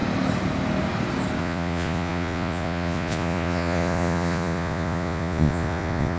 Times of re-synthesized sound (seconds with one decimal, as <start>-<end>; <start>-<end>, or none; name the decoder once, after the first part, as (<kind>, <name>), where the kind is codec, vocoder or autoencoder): 1.4-6.2 (vocoder, Vocos)